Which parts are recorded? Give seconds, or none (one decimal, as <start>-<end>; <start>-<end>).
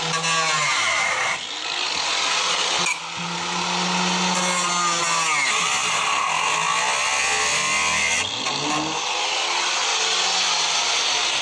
0.0-11.4